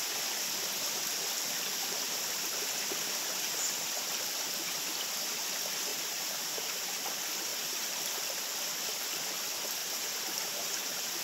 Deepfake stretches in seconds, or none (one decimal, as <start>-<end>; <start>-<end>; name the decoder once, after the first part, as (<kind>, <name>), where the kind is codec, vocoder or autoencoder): 5.9-7.0 (vocoder, BigVGAN v2); 7.5-8.0; 9.8-11.2